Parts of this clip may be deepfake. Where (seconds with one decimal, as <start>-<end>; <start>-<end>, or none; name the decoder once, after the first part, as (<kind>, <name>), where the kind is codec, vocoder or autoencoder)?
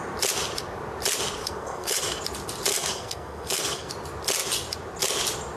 1.4-2.2 (codec, SNAC); 2.7-3.9